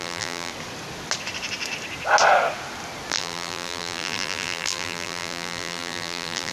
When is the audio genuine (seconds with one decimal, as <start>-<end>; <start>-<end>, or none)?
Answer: 0.5-3.1